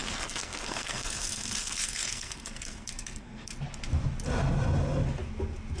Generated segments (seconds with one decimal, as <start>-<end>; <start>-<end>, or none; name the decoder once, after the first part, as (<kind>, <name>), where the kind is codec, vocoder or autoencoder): 0.0-3.5 (codec, SNAC)